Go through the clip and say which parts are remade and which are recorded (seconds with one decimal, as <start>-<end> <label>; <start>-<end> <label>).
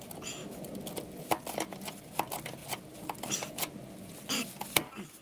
0.0-5.2 recorded